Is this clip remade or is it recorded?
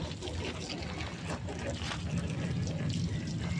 recorded